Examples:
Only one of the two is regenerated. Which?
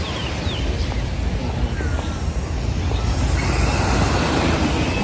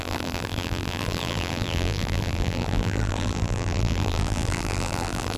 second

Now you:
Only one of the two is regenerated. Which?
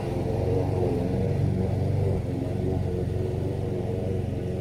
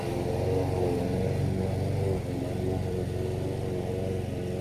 first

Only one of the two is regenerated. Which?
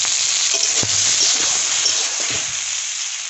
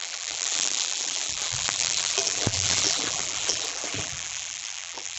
second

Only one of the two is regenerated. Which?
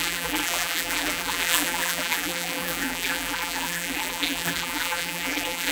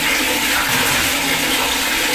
first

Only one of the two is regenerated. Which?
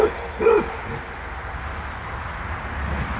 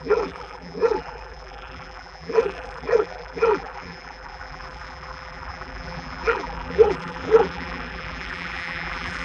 second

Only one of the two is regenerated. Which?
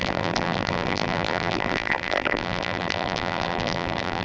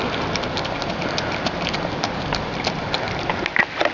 first